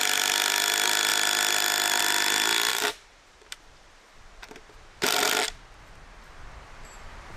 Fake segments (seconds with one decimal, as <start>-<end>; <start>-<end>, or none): 2.7-4.7